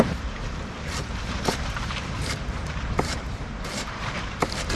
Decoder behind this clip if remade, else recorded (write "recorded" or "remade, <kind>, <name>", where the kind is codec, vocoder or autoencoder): remade, vocoder, BigVGAN v2